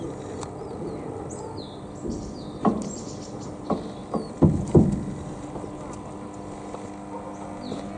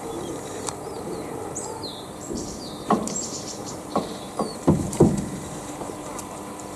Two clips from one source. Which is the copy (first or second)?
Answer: second